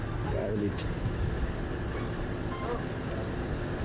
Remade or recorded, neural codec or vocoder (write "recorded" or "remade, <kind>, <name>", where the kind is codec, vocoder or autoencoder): recorded